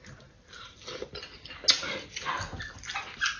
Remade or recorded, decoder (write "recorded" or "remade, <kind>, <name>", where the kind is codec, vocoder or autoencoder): recorded